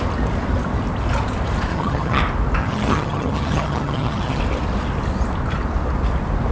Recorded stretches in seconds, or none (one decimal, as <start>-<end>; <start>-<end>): 0.0-1.7; 2.2-2.6; 4.4-6.5